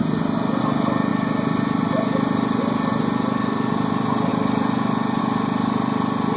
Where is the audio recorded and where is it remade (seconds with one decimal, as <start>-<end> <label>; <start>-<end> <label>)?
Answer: 0.0-0.6 remade; 0.6-1.1 recorded; 1.1-2.6 remade; 2.6-4.3 recorded; 4.3-5.2 remade; 5.2-6.4 recorded